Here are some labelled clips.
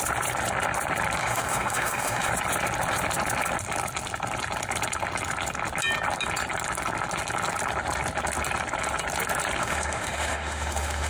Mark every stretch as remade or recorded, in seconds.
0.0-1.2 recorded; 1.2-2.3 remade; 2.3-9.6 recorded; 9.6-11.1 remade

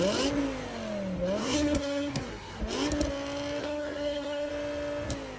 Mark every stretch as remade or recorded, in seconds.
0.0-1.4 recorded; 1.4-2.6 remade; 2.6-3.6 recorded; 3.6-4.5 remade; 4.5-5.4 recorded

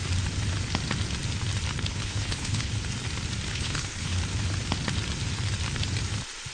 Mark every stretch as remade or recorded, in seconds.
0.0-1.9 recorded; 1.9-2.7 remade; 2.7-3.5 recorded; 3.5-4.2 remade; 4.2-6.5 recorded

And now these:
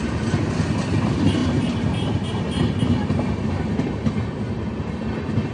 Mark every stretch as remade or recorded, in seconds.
0.0-1.4 recorded; 1.4-2.4 remade; 2.4-3.0 recorded; 3.0-5.0 remade; 5.0-5.5 recorded

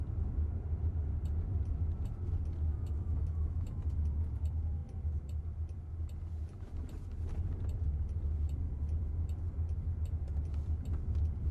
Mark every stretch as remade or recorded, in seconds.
0.0-2.7 recorded; 2.7-3.8 remade; 3.8-11.5 recorded

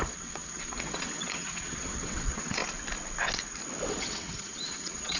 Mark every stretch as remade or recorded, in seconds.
0.0-2.6 remade; 2.6-3.9 recorded; 3.9-5.2 remade

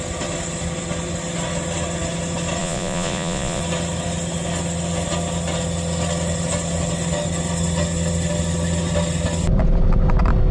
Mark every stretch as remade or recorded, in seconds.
0.0-2.6 recorded; 2.6-3.6 remade; 3.6-10.5 recorded

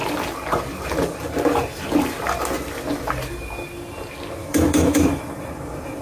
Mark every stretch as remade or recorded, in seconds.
0.0-4.4 recorded; 4.4-5.2 remade; 5.2-6.0 recorded